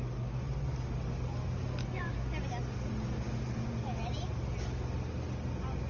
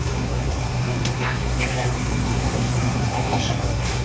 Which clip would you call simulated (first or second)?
second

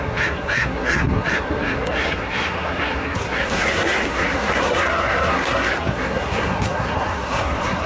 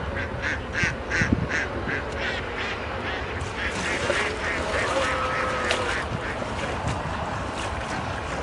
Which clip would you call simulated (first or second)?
first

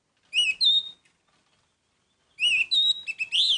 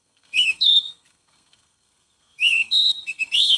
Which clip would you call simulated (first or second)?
second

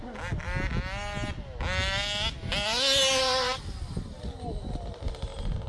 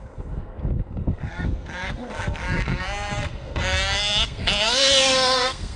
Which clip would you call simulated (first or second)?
second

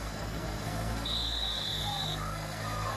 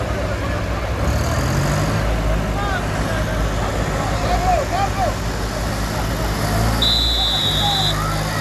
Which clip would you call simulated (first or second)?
first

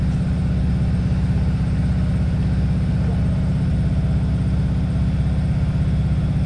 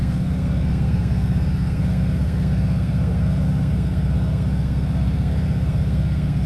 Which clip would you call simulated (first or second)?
second